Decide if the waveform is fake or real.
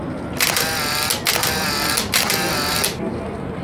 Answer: real